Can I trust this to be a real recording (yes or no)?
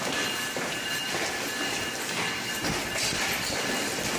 yes